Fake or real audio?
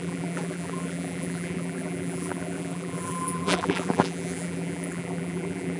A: fake